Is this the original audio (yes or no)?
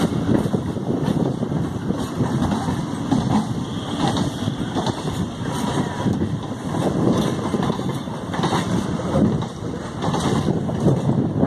no